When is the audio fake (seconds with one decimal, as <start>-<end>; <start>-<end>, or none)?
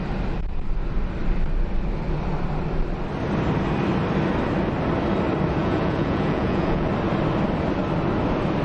5.6-6.9